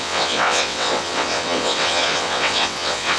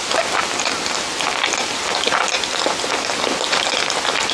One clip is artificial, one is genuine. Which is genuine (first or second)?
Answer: second